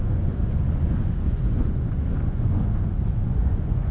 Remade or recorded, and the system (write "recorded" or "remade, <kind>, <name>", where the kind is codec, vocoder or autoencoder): remade, vocoder, Vocos